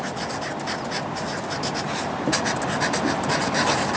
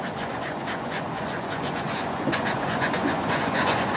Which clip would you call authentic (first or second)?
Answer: first